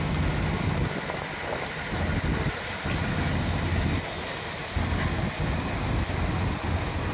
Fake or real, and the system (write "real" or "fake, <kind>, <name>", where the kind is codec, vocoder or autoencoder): real